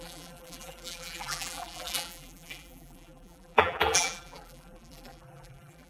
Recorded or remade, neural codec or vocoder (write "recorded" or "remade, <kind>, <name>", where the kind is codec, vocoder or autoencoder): remade, vocoder, BigVGAN v2